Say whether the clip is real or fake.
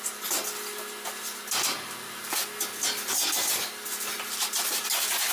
real